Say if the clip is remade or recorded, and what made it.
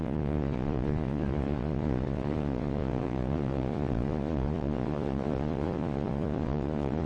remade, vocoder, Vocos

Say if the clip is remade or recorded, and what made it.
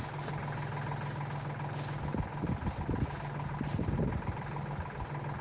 recorded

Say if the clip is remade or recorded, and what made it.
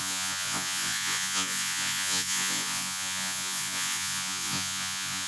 remade, vocoder, Vocos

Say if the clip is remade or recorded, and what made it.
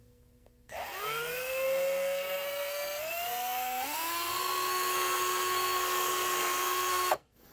remade, codec, SNAC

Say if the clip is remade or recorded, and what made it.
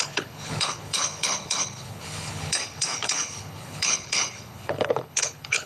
remade, codec, HILCodec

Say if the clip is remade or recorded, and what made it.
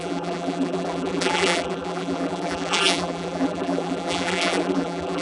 remade, vocoder, BigVGAN v2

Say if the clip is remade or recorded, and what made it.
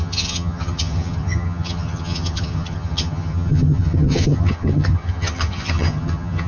remade, vocoder, HiFi-GAN